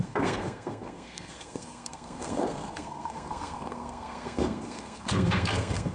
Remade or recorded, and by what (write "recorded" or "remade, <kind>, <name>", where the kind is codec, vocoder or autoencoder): remade, codec, SNAC